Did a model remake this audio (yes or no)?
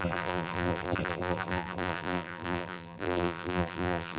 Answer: yes